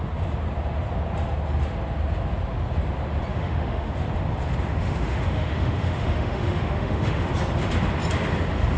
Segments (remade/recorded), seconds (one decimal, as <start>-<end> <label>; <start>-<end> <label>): 0.0-3.3 recorded; 3.3-3.9 remade; 3.9-4.7 recorded; 4.7-7.3 remade; 7.3-8.8 recorded